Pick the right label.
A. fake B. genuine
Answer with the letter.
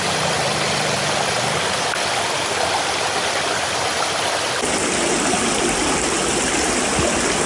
B